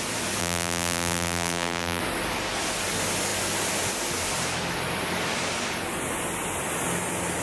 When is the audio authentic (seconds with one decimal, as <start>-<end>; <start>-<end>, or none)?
0.0-0.4; 2.0-7.4